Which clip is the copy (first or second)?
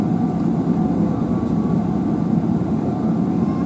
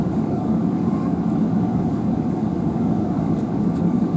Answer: second